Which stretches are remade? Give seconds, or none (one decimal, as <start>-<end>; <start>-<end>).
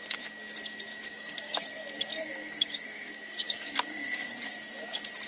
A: 0.9-1.6; 2.2-4.3